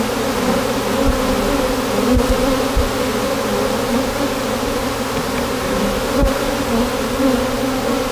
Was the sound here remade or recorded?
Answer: recorded